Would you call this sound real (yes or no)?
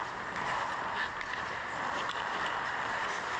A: yes